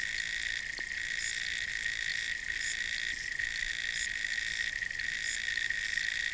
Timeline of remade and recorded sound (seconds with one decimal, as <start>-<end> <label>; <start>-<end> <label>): 0.0-6.3 recorded